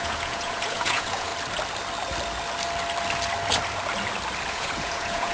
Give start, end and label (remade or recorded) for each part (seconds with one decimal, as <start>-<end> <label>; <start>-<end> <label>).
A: 0.0-1.3 remade; 1.3-4.5 recorded; 4.5-5.3 remade